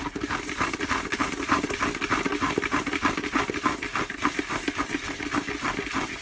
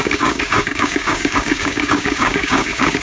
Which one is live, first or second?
first